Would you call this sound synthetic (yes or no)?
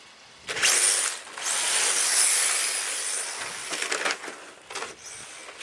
no